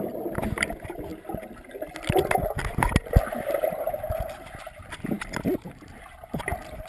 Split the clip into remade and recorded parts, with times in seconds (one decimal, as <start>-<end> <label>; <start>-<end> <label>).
0.0-6.9 recorded